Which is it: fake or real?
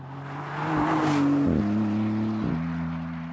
real